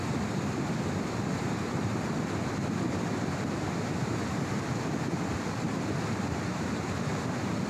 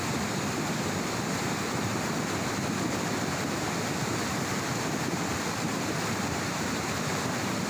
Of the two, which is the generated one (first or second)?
second